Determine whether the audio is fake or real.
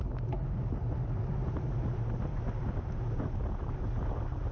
real